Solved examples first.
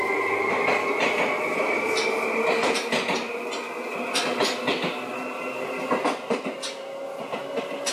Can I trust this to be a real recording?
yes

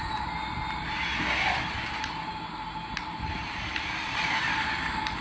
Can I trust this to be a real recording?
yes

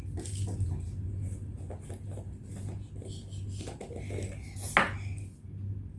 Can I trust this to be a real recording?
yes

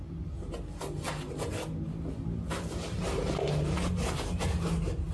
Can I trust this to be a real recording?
yes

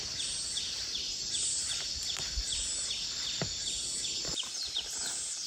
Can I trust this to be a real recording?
yes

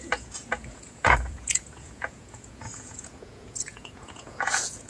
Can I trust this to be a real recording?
no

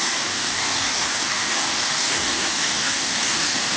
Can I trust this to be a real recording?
no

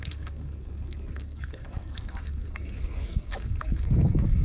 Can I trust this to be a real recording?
no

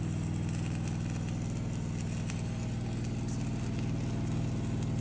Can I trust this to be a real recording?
yes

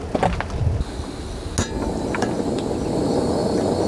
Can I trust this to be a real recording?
yes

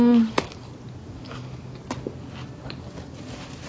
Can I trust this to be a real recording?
yes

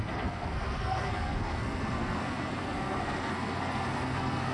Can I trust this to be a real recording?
no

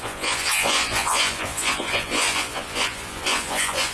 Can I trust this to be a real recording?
no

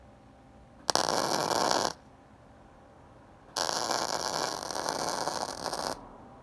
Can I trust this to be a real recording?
yes